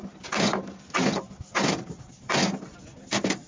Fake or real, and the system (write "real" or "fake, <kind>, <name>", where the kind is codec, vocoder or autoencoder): real